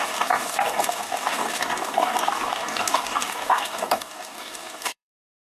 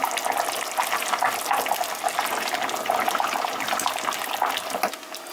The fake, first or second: first